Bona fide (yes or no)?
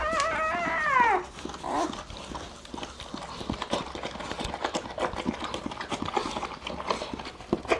yes